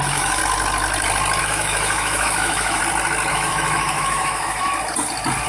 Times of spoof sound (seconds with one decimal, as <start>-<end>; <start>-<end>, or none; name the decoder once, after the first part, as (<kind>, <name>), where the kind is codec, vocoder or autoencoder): 0.0-0.4 (autoencoder, DAC-VAE); 1.4-2.8; 3.3-4.7